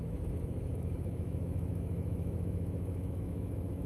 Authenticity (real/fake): fake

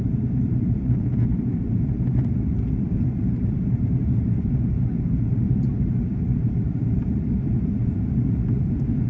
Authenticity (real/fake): fake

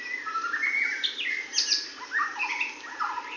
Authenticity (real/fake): real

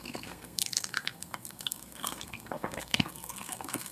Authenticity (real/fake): fake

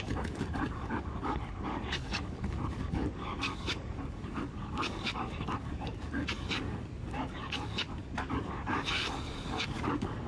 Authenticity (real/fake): fake